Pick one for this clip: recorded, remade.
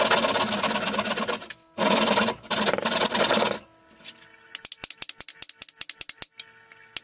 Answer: recorded